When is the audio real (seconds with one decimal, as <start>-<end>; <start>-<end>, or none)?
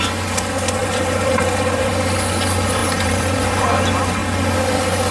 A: 0.0-0.8; 1.9-2.8; 3.6-5.1